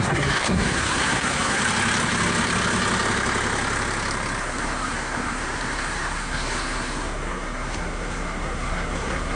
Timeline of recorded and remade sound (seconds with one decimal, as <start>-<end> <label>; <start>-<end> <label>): 0.0-1.6 remade; 1.6-4.4 recorded; 4.4-9.4 remade